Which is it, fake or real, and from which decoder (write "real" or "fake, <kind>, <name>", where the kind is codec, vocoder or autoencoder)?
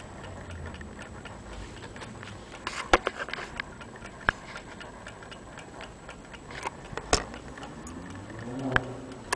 real